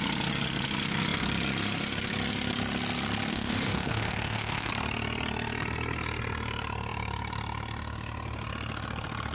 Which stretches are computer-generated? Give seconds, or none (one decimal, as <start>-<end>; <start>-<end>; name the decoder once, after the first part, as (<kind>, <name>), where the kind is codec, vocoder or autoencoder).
3.3-4.7 (autoencoder, DAC-VAE)